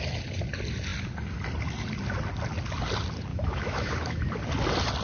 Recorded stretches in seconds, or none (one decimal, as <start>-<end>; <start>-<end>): 0.0-3.3; 4.3-5.0